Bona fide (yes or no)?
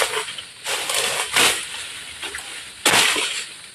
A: yes